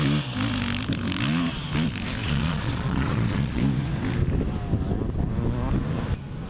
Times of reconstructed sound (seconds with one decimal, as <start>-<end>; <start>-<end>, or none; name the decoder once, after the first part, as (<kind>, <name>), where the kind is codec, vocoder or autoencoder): 2.2-3.6 (vocoder, Vocos)